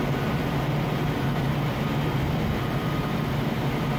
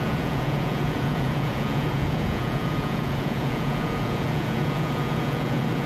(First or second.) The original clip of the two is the first